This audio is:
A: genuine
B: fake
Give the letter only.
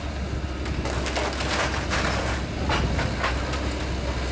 A